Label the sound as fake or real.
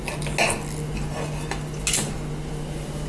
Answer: real